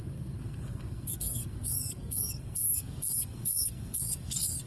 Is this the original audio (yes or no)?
no